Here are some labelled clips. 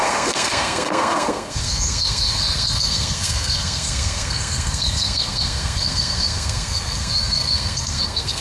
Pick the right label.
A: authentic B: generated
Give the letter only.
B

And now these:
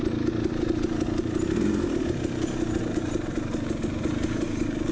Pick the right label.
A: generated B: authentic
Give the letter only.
B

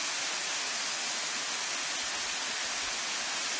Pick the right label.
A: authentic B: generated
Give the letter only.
A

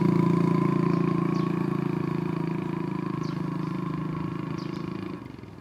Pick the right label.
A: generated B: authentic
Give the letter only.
B